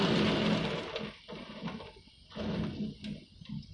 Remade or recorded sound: recorded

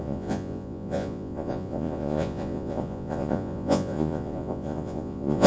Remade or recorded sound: remade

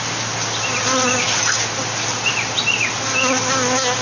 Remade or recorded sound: recorded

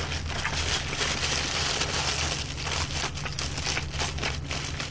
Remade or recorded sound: recorded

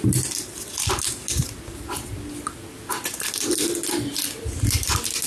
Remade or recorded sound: recorded